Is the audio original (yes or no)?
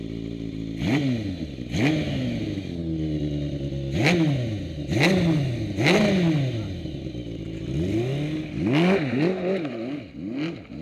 yes